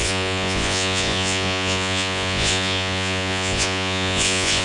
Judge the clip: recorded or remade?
remade